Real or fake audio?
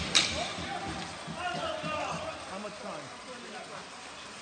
real